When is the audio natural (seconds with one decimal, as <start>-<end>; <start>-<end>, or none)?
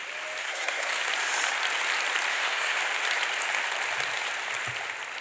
0.0-0.4; 1.0-2.3; 2.8-5.2